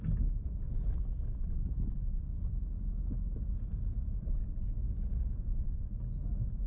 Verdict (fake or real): real